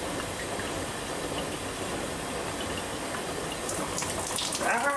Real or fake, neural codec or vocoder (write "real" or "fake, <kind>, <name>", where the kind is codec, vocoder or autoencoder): real